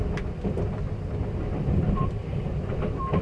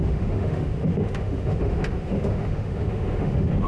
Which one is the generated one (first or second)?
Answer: second